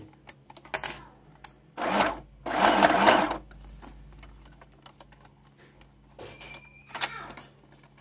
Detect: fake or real real